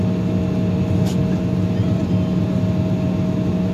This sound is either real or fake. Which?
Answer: real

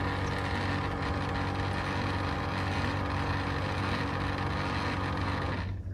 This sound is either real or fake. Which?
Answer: real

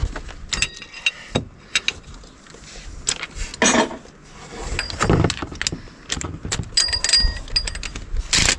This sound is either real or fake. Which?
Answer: real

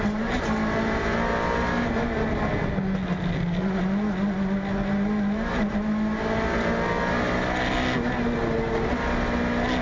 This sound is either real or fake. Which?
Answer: real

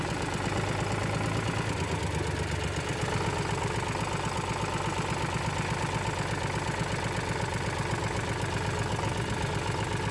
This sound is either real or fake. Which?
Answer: real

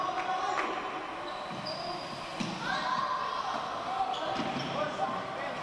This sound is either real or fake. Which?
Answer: real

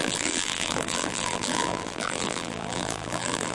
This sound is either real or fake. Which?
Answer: fake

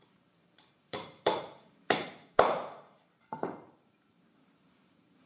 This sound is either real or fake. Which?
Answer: fake